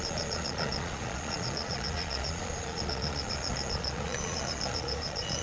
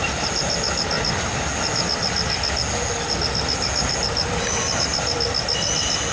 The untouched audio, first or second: second